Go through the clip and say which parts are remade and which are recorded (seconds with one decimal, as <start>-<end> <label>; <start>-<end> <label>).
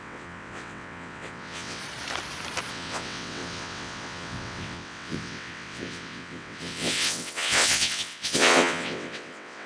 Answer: 0.0-1.8 remade; 1.8-2.7 recorded; 2.7-9.7 remade